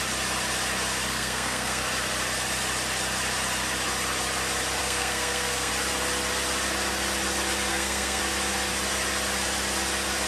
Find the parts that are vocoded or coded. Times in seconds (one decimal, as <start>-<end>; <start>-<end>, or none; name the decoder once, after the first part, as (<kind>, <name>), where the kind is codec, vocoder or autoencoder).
1.1-1.8 (codec, SNAC); 4.8-5.7; 7.7-8.2